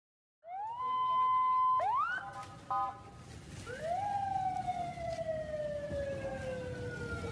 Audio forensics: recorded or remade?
recorded